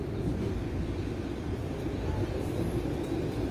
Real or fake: fake